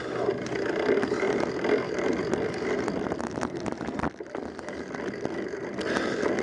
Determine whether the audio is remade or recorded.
recorded